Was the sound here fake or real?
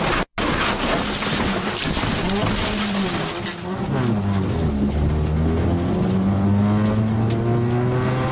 real